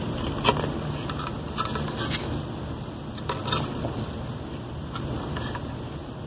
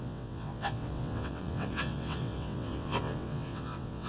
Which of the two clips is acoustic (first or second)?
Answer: first